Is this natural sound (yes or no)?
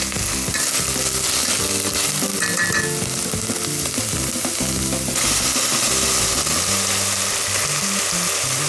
yes